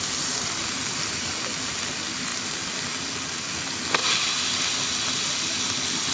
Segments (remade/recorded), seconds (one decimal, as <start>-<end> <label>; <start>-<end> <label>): 0.0-6.1 recorded